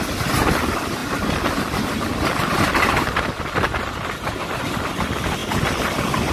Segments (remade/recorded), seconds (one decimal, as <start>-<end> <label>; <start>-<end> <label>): 0.0-6.3 recorded